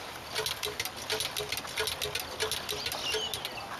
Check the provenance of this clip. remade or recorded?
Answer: recorded